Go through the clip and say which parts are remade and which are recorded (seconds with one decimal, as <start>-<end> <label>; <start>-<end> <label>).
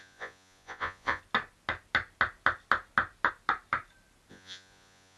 0.0-1.2 remade; 1.2-4.3 recorded; 4.3-5.2 remade